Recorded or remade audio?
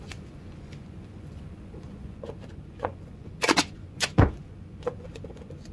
remade